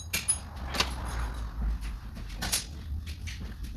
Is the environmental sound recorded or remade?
recorded